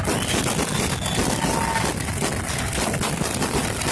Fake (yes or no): no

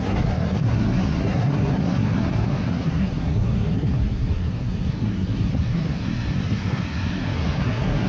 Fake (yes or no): yes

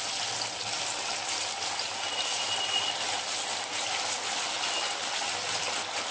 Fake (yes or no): no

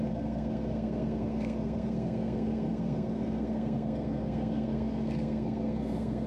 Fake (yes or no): yes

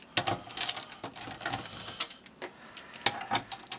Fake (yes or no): no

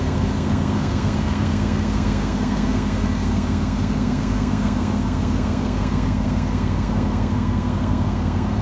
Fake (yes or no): yes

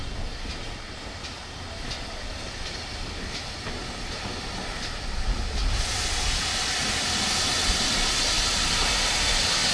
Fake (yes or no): no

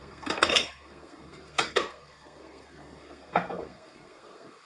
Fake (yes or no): yes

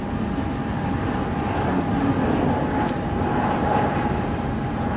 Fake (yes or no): no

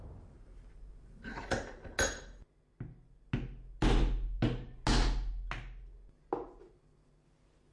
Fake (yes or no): no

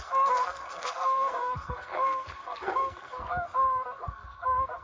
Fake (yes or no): yes